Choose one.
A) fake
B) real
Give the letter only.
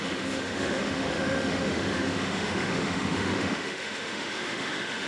A